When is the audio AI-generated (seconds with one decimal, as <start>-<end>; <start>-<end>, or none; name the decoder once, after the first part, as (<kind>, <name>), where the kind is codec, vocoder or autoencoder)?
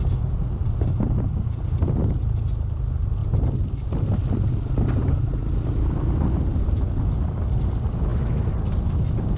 none